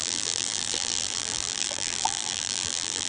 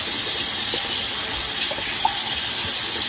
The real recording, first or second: second